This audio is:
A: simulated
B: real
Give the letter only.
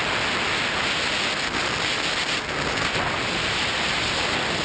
B